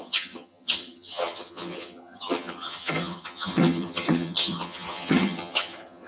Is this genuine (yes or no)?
no